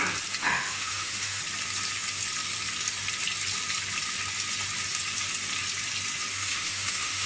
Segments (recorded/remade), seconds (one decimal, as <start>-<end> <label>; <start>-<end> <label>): 0.0-0.4 recorded; 0.4-1.4 remade; 1.4-6.3 recorded; 6.3-7.3 remade